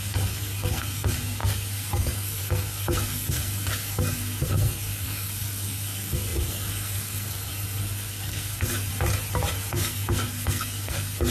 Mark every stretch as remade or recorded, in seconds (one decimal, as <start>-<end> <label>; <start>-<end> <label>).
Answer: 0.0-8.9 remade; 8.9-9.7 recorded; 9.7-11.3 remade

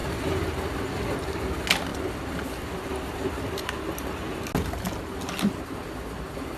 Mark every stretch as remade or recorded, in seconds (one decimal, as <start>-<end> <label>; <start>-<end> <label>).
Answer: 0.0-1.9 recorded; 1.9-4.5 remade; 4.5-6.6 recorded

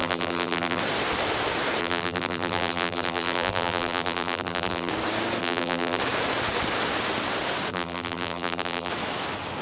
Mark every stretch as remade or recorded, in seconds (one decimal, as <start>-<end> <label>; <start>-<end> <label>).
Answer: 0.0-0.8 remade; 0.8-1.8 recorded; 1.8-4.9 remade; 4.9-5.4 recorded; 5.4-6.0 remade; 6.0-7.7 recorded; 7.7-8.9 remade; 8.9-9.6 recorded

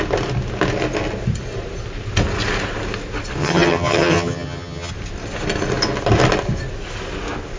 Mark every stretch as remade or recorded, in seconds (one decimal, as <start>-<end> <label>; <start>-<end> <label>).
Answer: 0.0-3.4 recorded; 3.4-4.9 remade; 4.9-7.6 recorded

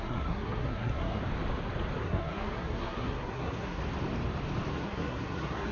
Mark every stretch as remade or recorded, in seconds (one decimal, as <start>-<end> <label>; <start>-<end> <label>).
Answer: 0.0-1.2 remade; 1.2-2.0 recorded; 2.0-3.8 remade; 3.8-4.7 recorded; 4.7-5.7 remade